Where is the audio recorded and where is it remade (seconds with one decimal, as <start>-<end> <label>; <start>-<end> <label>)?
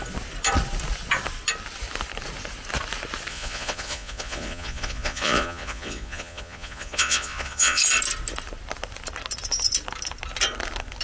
0.0-3.3 recorded; 3.3-7.8 remade; 7.8-11.0 recorded